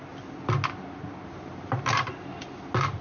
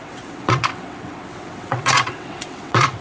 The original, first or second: first